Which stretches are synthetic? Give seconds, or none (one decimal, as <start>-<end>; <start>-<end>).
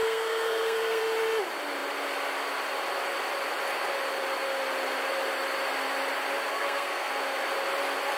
0.0-1.0; 6.5-7.1